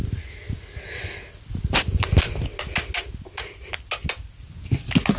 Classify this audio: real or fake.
real